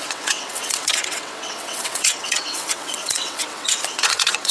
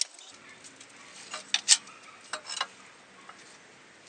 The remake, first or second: first